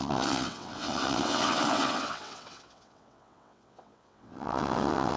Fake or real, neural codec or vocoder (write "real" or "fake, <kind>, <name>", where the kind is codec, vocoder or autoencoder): fake, vocoder, WaveNeXt